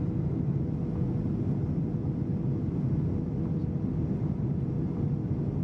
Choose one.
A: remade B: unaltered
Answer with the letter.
B